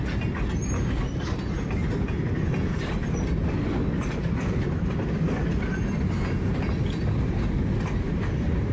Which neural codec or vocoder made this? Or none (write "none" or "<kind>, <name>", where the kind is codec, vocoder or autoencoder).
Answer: none